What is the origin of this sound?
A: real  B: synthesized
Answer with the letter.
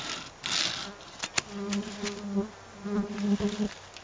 A